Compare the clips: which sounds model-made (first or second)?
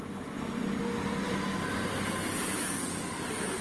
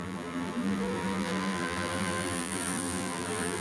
second